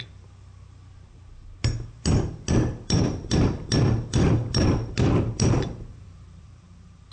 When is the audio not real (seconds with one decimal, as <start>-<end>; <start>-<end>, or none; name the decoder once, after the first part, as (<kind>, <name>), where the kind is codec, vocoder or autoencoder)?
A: 3.0-7.1 (vocoder, BigVGAN v2)